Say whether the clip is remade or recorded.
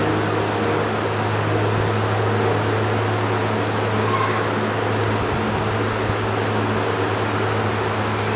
recorded